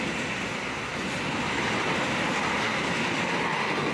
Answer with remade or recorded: recorded